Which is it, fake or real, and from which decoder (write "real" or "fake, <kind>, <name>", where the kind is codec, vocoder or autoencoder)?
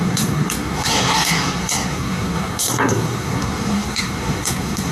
fake, codec, SNAC